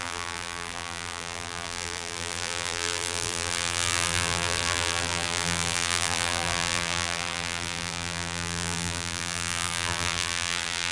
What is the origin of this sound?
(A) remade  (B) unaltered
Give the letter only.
A